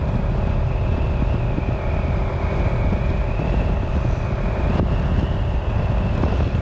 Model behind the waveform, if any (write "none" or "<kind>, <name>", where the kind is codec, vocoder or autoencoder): none